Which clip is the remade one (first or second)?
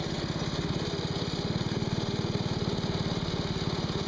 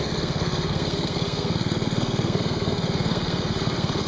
second